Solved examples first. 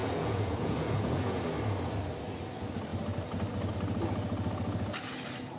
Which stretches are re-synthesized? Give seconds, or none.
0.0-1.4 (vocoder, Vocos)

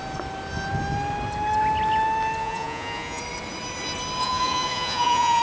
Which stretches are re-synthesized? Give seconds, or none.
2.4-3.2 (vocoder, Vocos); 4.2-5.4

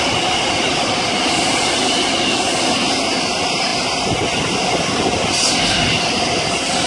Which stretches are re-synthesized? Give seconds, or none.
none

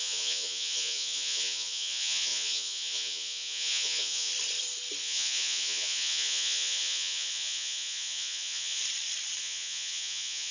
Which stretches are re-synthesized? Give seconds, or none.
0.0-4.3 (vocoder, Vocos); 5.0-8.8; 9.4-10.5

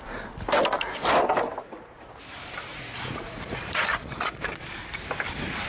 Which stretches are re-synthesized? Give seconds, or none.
1.6-2.2 (vocoder, Vocos); 2.7-4.5